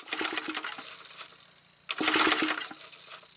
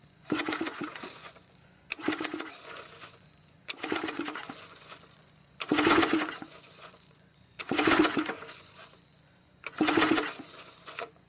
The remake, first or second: second